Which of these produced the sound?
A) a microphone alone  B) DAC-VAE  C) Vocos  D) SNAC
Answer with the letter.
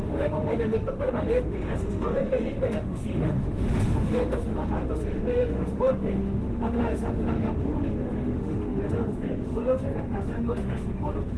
B